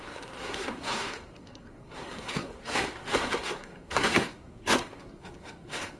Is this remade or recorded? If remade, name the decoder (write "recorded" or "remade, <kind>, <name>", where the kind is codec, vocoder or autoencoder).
remade, codec, SNAC